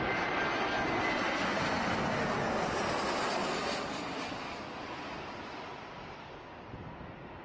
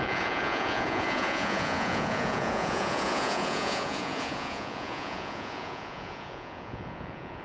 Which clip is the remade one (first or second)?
second